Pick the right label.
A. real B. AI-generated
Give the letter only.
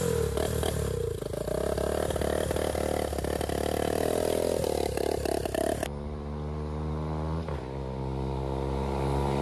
A